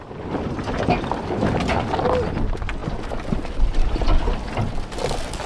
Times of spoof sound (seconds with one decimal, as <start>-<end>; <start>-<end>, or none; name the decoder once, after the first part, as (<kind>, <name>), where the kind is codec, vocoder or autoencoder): none

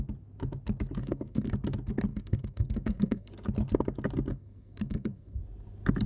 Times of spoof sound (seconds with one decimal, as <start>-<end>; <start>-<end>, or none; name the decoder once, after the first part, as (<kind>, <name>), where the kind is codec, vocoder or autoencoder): 1.0-1.5 (codec, SNAC); 2.1-3.3; 4.3-5.4

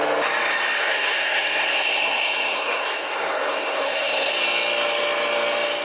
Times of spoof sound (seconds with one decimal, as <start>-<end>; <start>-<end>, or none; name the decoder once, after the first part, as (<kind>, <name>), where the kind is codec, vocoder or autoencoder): 0.8-4.3 (codec, SNAC)

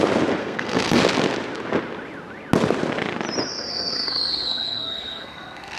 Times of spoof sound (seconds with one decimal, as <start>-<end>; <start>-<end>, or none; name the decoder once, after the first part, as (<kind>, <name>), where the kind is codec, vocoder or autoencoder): 0.4-1.0 (codec, SNAC); 3.5-5.8

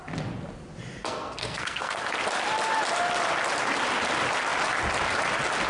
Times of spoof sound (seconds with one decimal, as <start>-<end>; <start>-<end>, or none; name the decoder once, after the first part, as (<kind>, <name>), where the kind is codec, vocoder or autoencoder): 1.0-2.0 (codec, SNAC)

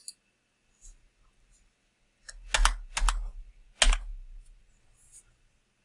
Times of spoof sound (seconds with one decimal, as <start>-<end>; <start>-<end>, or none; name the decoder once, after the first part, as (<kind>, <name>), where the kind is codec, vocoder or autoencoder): none